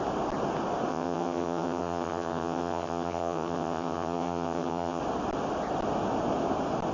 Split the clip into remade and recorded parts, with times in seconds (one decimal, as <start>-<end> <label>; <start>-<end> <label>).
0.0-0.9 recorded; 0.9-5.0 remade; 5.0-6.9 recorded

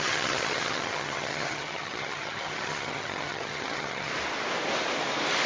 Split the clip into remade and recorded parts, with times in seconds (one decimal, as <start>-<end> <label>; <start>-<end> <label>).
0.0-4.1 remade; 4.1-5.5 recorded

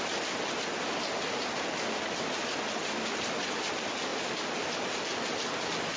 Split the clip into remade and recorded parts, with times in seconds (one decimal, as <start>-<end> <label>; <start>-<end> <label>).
0.0-6.0 recorded

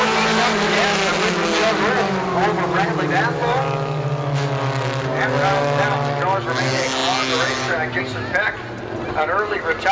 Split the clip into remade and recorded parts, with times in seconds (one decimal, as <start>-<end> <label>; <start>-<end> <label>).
0.0-9.9 recorded

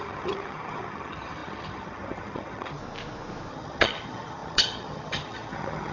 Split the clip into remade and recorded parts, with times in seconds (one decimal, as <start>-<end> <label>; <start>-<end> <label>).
0.0-2.8 remade; 2.8-3.5 recorded; 3.5-5.9 remade

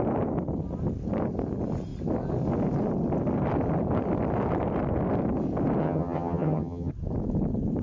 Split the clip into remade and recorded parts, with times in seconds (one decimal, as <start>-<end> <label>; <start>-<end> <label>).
0.0-5.8 recorded; 5.8-6.9 remade; 6.9-7.8 recorded

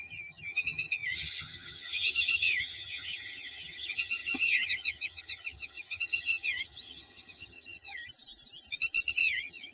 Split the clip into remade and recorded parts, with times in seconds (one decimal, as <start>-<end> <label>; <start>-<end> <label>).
0.0-8.0 remade; 8.0-9.1 recorded; 9.1-9.7 remade

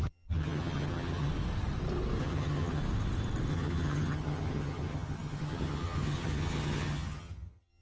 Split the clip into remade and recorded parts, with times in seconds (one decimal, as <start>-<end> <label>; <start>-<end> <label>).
0.0-1.3 remade; 1.3-2.2 recorded; 2.2-2.8 remade; 2.8-3.5 recorded; 3.5-7.8 remade